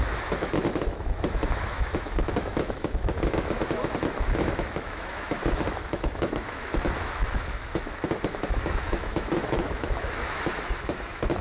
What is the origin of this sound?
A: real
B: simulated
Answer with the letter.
B